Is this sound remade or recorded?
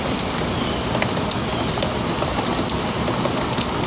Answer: recorded